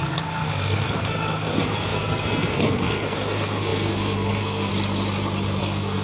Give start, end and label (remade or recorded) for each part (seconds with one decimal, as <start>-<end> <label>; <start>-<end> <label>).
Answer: 0.0-4.7 remade; 4.7-5.6 recorded; 5.6-6.0 remade